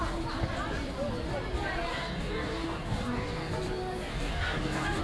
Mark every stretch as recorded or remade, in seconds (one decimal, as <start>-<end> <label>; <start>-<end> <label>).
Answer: 0.0-1.9 recorded; 1.9-3.5 remade; 3.5-4.1 recorded; 4.1-5.0 remade